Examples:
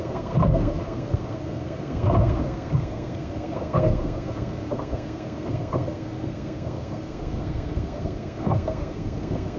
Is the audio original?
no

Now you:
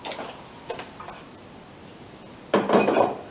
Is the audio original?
yes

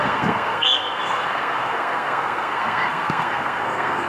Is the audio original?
no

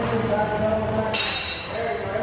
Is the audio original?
yes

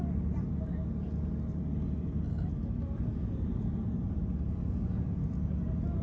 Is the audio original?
yes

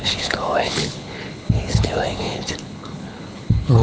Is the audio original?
no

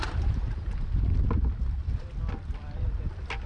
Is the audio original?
yes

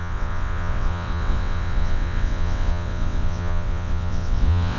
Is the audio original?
no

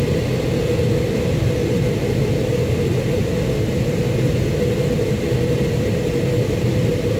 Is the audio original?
yes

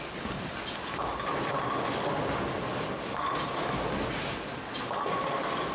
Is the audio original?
yes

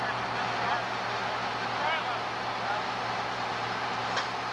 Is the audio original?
yes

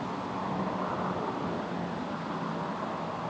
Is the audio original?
yes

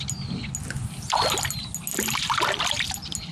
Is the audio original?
yes